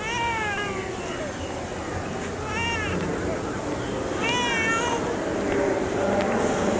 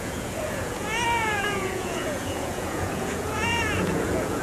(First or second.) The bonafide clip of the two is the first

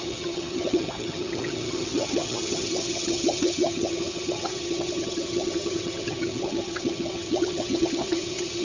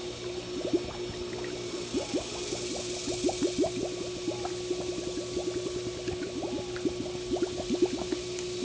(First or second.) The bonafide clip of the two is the second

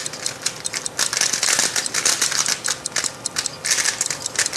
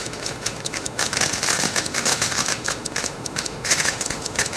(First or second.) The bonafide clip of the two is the first